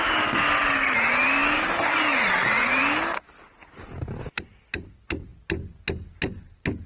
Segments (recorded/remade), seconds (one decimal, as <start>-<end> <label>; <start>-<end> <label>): 0.0-6.9 recorded

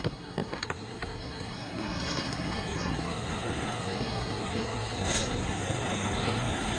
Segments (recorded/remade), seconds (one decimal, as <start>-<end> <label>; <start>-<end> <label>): 0.0-6.8 remade